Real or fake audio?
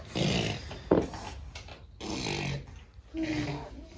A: real